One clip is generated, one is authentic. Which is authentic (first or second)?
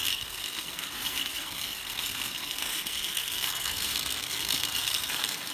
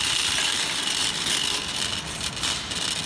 second